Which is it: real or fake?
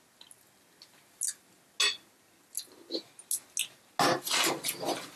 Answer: real